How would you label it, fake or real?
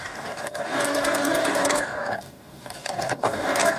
fake